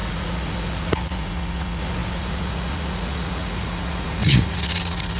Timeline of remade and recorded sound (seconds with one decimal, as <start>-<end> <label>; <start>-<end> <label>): 0.0-5.2 remade